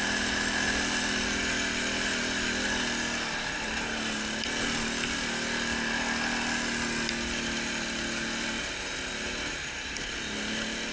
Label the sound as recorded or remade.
recorded